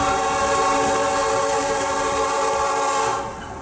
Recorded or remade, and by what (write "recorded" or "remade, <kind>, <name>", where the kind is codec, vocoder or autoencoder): recorded